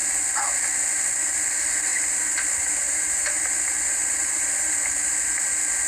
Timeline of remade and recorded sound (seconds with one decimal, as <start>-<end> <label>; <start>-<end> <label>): 0.0-5.9 recorded